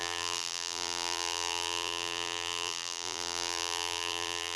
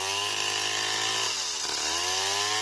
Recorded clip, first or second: second